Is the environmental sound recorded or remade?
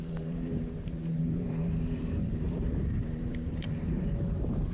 remade